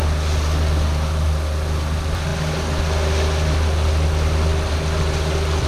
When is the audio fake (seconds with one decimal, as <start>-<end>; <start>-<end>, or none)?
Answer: none